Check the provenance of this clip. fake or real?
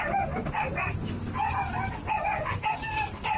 real